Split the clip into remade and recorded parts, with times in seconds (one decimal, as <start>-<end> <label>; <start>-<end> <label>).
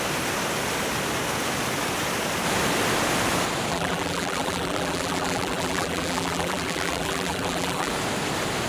0.0-3.7 recorded; 3.7-7.9 remade; 7.9-8.7 recorded